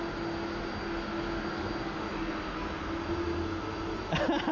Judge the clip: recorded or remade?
recorded